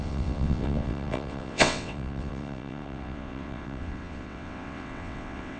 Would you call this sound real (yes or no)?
no